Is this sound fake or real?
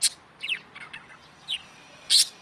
real